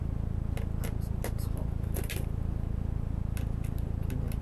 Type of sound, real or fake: real